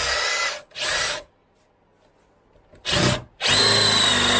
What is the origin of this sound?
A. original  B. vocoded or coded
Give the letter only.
A